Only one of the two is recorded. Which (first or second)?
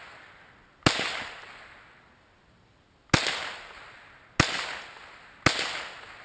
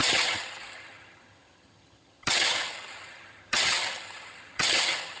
first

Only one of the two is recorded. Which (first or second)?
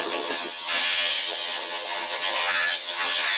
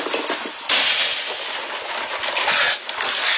second